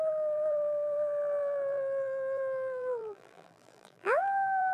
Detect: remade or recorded remade